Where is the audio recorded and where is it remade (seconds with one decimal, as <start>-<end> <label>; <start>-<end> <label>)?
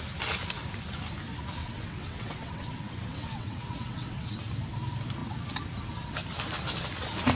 0.0-1.6 recorded; 1.6-4.5 remade; 4.5-7.4 recorded